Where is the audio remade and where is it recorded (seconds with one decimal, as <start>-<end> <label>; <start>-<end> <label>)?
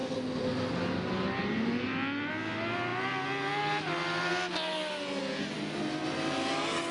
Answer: 0.0-6.9 recorded